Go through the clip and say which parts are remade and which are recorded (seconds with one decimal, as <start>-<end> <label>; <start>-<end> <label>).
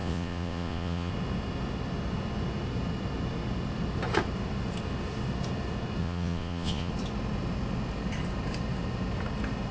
0.0-1.1 remade; 1.1-6.0 recorded; 6.0-6.9 remade; 6.9-9.7 recorded